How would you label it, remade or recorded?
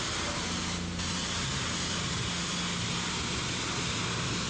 recorded